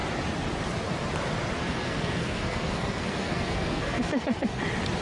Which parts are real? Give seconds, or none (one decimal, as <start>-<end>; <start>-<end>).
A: 0.0-1.6; 4.6-5.0